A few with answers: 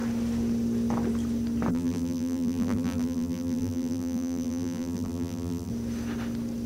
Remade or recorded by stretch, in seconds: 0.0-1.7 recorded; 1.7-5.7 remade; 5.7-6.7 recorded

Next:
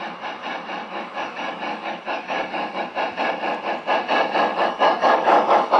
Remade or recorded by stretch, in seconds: 0.0-0.8 recorded; 0.8-2.8 remade; 2.8-4.5 recorded; 4.5-5.8 remade

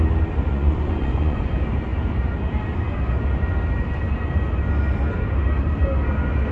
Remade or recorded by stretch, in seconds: 0.0-0.5 recorded; 0.5-1.5 remade; 1.5-6.5 recorded

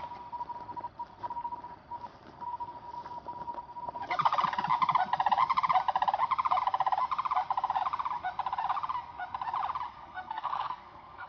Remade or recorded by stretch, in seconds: 0.0-9.9 recorded; 9.9-11.3 remade

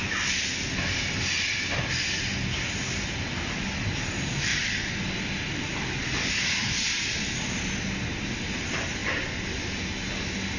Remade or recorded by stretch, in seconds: 0.0-10.6 recorded

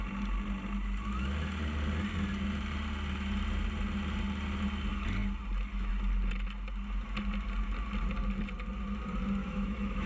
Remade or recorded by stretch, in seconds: 0.0-9.4 recorded; 9.4-10.1 remade